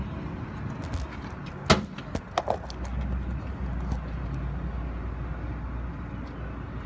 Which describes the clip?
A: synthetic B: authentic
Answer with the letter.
B